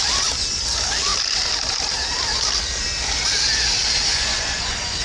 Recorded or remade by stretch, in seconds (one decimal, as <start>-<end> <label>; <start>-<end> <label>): 0.0-4.1 recorded; 4.1-5.0 remade